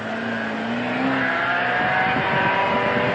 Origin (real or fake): real